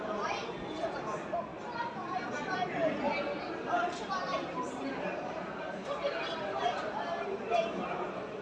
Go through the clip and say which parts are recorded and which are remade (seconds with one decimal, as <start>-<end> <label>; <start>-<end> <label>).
0.0-4.2 recorded; 4.2-7.4 remade; 7.4-8.4 recorded